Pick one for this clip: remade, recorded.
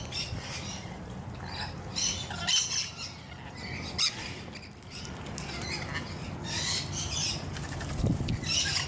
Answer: recorded